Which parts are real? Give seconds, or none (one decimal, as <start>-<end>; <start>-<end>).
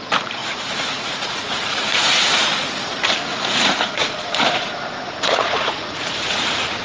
0.0-0.4; 2.9-3.3